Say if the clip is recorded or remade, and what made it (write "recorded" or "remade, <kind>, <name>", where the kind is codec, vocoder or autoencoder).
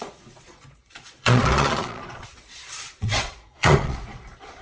remade, vocoder, Vocos